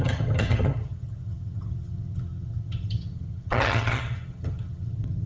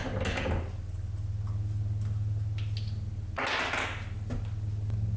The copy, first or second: first